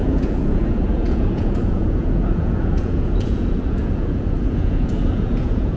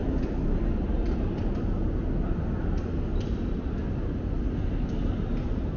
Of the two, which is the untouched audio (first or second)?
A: second